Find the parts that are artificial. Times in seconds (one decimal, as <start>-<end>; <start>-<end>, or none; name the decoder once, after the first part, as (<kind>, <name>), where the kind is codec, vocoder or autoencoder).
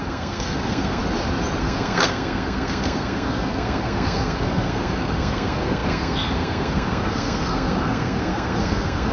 0.0-1.0 (codec, SNAC); 1.6-9.1